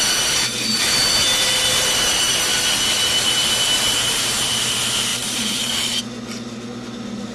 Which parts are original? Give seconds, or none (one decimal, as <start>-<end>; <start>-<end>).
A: 0.0-5.1; 6.0-7.3